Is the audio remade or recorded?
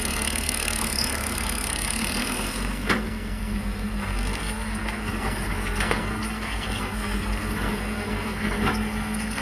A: remade